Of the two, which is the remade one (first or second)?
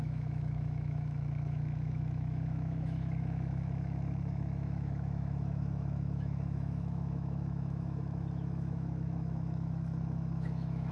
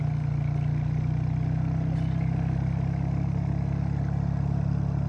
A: first